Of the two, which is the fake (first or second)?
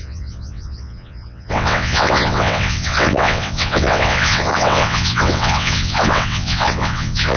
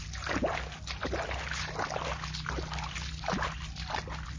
first